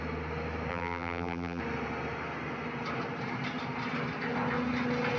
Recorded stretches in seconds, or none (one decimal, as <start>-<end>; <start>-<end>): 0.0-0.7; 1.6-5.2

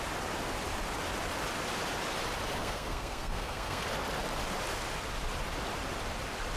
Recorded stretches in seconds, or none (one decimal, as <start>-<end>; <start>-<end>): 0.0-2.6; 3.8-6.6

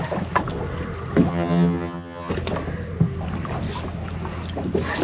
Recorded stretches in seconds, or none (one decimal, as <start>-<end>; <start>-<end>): 0.0-1.3; 2.3-5.0

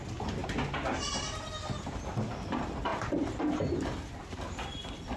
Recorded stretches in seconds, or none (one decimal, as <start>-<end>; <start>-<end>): 0.0-5.2